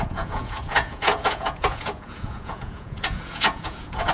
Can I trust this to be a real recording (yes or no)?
no